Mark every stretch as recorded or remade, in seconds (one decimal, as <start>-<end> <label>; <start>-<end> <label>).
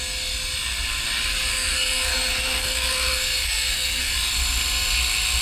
0.0-1.5 recorded; 1.5-4.1 remade; 4.1-5.4 recorded